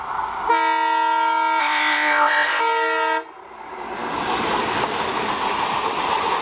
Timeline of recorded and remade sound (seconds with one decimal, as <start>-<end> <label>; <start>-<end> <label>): 0.0-1.6 recorded; 1.6-2.6 remade; 2.6-6.4 recorded